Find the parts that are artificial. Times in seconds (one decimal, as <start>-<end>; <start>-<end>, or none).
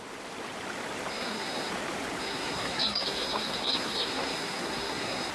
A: 1.1-1.7; 2.2-5.3